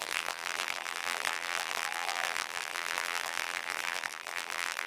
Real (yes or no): no